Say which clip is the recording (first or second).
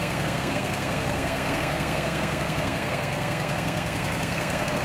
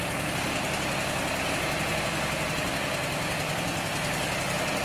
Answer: second